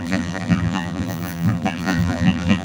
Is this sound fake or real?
fake